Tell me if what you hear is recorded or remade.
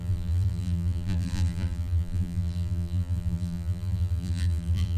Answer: remade